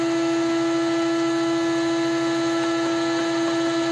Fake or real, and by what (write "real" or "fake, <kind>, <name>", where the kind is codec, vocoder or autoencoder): real